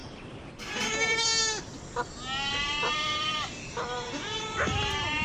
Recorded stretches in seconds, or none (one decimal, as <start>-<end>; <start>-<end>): 1.3-2.5